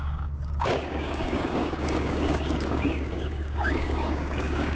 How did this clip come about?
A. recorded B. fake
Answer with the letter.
B